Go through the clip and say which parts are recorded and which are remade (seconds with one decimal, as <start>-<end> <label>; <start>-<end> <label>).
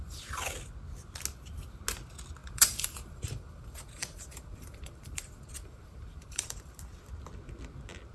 0.0-2.4 recorded; 2.4-6.8 remade; 6.8-8.1 recorded